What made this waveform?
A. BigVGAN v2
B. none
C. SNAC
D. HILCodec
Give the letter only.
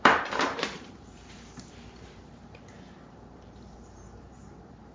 A